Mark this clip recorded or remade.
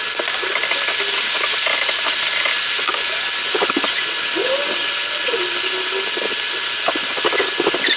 recorded